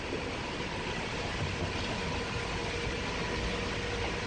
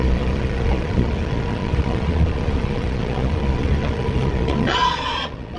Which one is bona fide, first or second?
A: first